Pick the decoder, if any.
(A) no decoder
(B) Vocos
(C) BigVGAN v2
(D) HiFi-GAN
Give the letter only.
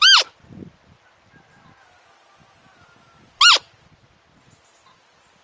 A